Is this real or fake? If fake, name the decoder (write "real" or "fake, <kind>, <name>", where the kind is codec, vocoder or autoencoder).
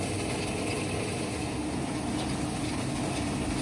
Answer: real